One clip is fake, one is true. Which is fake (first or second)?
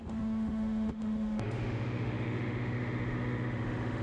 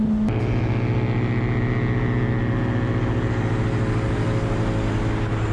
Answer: first